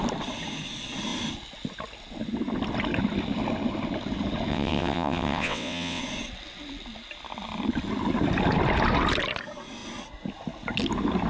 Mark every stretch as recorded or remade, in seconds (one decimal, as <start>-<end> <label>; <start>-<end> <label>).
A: 0.0-4.5 recorded; 4.5-6.0 remade; 6.0-11.3 recorded